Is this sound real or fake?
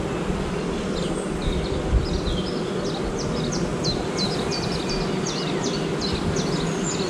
real